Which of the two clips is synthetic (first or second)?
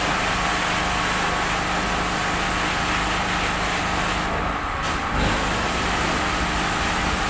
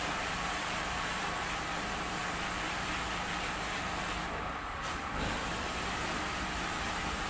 second